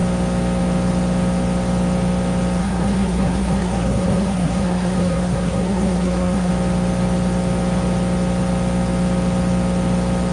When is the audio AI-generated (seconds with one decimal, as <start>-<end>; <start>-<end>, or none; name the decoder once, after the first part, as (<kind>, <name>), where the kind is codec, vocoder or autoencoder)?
2.6-6.5 (codec, SNAC)